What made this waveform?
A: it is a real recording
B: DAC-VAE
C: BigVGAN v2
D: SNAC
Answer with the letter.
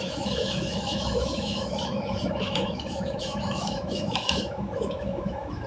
B